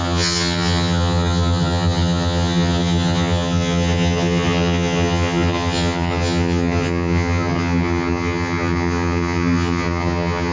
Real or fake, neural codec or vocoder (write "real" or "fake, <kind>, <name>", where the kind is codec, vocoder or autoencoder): fake, vocoder, HiFi-GAN